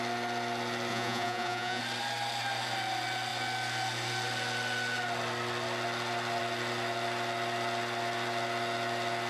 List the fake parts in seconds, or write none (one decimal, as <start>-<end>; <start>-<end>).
0.9-1.8